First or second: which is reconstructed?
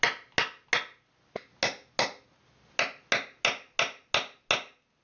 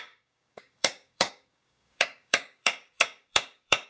second